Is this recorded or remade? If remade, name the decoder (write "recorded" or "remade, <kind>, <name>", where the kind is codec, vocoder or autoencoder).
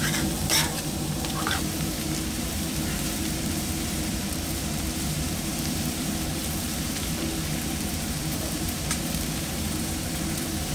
remade, vocoder, BigVGAN v2